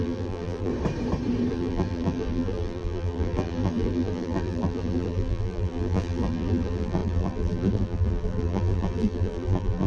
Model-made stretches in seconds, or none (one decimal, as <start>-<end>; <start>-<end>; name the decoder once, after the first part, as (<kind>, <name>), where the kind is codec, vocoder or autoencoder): 0.0-0.7 (vocoder, BigVGAN v2); 1.5-9.9